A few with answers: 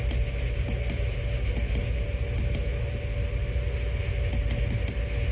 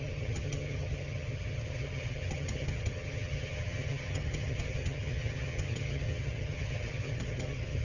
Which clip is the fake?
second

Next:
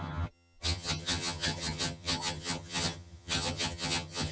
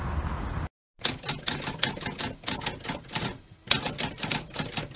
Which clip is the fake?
first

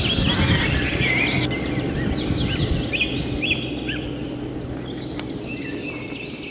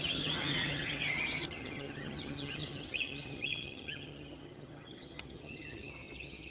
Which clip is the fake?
second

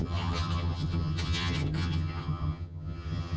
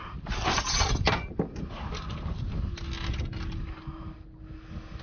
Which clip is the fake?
first